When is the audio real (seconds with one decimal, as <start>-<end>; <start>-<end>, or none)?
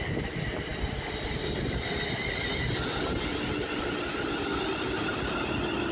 0.0-5.9